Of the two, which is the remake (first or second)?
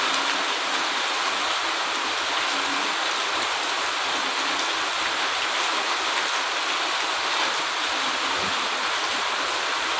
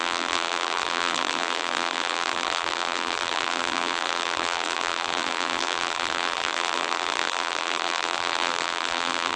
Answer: second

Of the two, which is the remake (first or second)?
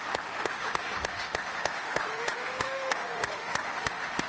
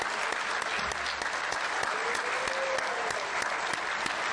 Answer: first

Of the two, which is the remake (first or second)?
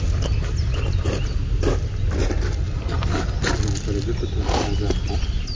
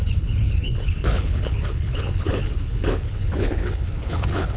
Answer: second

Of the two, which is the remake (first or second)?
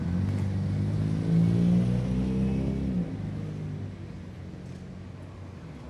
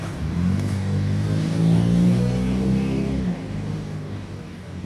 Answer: second